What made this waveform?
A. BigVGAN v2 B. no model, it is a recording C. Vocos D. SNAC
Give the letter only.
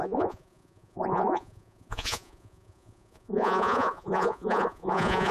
C